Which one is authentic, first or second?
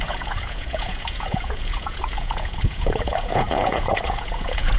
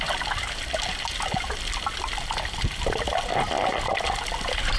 second